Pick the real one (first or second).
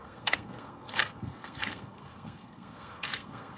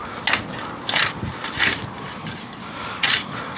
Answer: second